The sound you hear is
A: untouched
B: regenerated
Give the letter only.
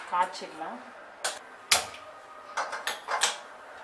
A